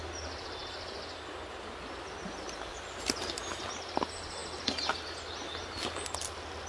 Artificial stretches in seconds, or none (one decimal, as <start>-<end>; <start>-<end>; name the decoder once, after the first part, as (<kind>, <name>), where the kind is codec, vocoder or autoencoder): none